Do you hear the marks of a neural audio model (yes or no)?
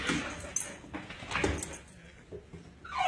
no